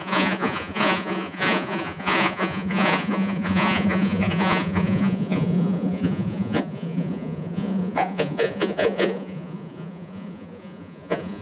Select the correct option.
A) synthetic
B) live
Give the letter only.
A